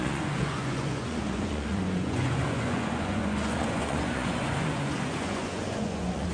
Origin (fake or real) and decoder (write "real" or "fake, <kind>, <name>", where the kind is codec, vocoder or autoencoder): fake, vocoder, Vocos